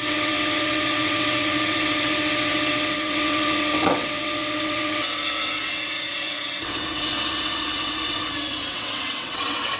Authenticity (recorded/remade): remade